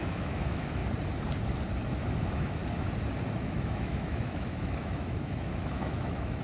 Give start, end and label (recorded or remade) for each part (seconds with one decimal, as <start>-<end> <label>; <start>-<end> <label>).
0.0-0.8 remade; 0.8-2.2 recorded; 2.2-2.6 remade; 2.6-3.3 recorded; 3.3-6.4 remade